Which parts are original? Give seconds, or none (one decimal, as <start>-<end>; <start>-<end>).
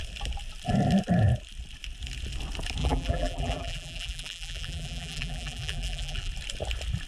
0.0-2.8; 6.3-7.1